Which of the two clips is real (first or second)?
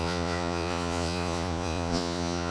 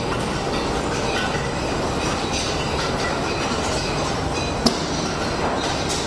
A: second